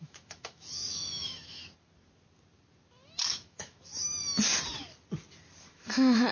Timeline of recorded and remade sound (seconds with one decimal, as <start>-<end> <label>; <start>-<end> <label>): 0.0-1.6 remade; 1.6-3.3 recorded; 3.3-3.9 remade; 3.9-5.7 recorded; 5.7-6.3 remade